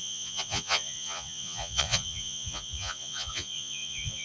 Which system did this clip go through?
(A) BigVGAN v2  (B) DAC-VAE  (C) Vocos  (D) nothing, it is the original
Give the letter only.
C